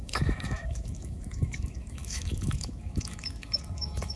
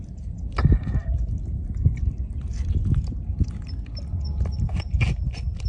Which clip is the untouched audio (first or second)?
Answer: second